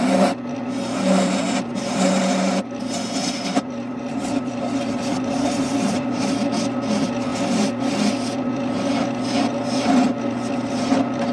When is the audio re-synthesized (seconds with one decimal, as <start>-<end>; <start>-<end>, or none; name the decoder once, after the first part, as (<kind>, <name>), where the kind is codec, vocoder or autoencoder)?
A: 3.2-6.3 (vocoder, BigVGAN v2)